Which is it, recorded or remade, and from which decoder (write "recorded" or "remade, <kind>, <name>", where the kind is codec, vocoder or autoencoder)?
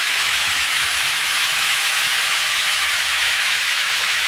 remade, autoencoder, DAC-VAE